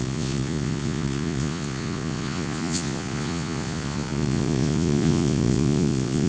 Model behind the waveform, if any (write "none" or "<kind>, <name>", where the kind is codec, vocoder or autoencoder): vocoder, Vocos